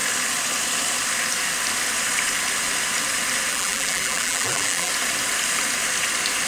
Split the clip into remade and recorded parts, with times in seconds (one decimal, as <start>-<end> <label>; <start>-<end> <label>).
0.0-3.5 recorded; 3.5-4.9 remade; 4.9-6.5 recorded